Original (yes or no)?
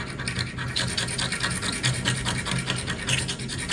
yes